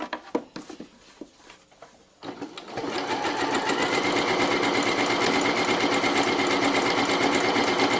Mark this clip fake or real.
real